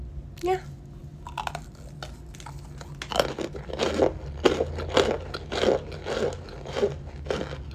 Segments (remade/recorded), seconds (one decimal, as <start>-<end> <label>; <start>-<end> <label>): 0.0-7.7 recorded